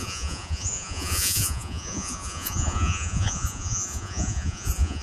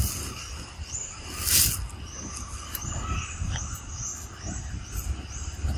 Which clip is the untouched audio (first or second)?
second